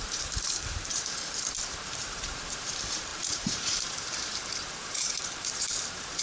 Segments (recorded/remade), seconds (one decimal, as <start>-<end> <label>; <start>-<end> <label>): 0.0-6.2 remade